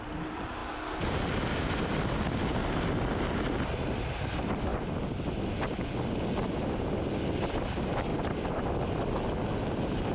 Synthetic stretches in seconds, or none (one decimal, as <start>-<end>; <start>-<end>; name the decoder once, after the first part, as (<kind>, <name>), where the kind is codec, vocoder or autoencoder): 0.0-0.6 (vocoder, BigVGAN v2); 1.7-4.7; 6.6-8.1; 9.7-10.1